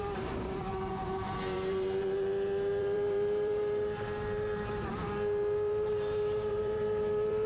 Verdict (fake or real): fake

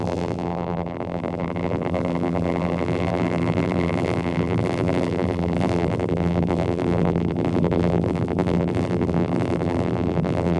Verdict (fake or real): fake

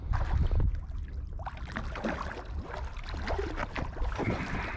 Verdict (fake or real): real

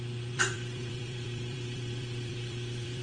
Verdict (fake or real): fake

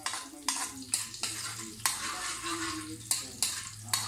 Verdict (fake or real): real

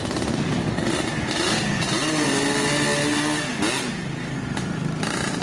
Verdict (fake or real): real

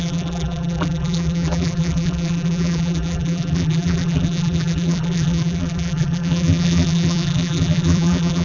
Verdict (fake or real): fake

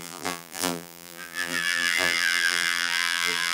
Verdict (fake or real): fake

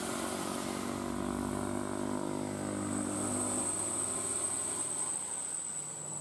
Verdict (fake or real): real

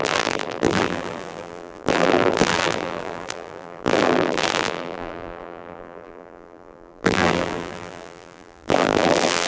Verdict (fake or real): fake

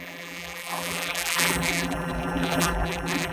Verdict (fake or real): fake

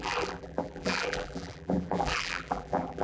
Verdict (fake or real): fake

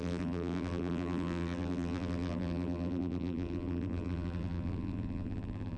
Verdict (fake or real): fake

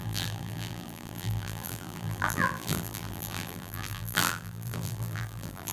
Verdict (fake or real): fake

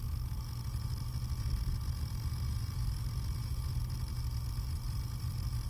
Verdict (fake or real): real